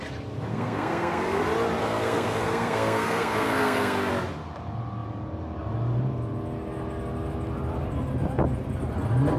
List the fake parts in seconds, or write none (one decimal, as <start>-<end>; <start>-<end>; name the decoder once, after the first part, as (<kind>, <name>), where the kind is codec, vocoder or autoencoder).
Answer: 0.5-1.4 (codec, SNAC); 1.8-4.1